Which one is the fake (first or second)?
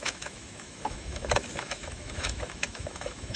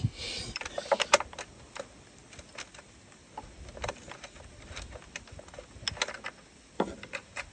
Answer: first